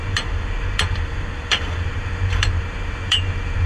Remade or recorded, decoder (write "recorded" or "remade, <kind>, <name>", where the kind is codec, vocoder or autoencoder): remade, vocoder, BigVGAN v2